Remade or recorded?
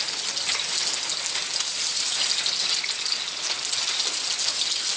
recorded